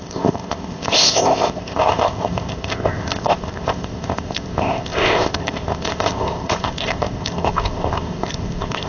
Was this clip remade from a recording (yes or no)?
yes